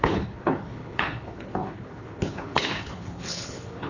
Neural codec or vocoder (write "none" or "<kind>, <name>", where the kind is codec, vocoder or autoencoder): codec, HILCodec